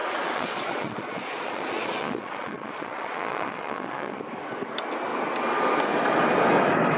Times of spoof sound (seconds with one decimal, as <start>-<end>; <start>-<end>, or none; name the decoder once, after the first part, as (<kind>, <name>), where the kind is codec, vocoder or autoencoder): 0.0-4.2 (vocoder, Vocos)

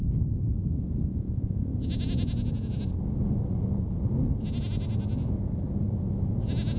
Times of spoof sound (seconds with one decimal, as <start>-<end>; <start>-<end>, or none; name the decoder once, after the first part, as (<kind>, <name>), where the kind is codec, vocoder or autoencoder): 1.1-1.7 (vocoder, Vocos)

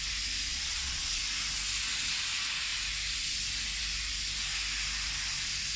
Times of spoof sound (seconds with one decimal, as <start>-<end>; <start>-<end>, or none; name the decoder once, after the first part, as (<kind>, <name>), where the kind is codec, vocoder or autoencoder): 0.5-1.2 (vocoder, Vocos)

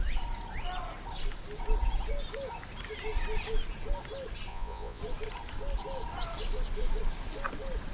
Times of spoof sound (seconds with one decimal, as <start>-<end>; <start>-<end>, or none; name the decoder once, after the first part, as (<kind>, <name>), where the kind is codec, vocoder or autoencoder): 4.5-5.0 (vocoder, Vocos)

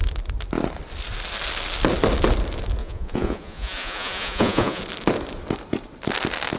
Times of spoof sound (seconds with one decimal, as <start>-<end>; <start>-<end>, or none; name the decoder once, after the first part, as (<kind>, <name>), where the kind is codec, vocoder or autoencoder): 2.8-4.8 (vocoder, Vocos)

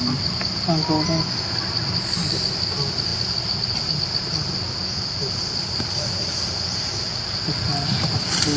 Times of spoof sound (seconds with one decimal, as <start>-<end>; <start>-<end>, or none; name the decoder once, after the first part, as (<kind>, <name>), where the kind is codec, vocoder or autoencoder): none